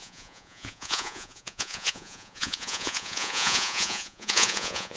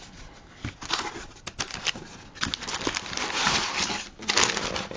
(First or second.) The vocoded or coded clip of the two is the first